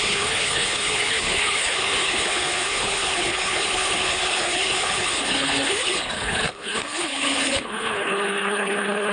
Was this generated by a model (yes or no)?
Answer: yes